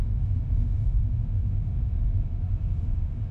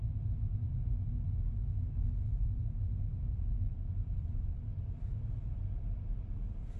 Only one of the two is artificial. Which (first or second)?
first